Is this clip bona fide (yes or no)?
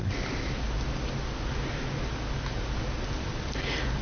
yes